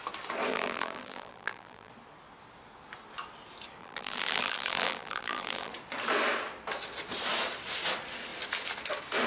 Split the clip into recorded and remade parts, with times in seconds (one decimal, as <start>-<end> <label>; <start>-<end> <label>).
0.0-0.5 recorded; 0.5-1.9 remade; 1.9-3.8 recorded; 3.8-5.7 remade; 5.7-9.3 recorded